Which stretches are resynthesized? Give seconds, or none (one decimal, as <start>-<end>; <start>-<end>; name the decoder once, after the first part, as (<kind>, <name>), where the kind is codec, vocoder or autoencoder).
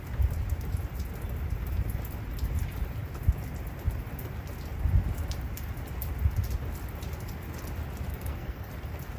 8.1-8.7 (codec, SNAC)